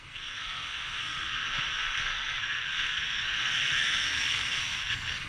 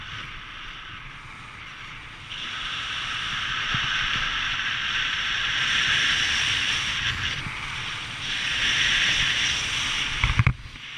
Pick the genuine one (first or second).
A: second